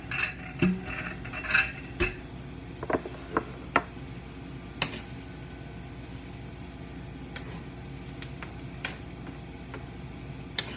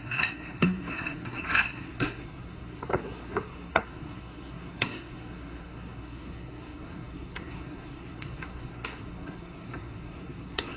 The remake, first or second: second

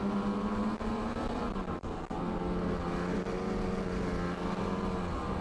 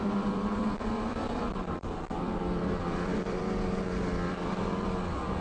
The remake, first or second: second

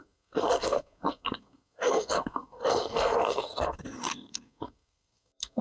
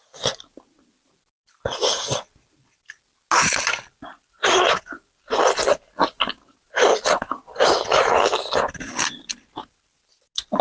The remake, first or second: first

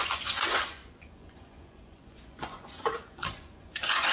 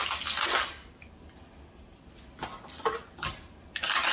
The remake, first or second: first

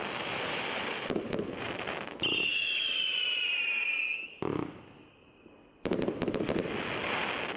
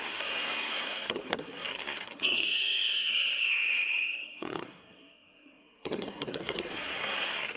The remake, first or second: second